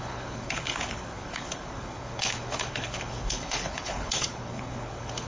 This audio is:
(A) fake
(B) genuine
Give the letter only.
A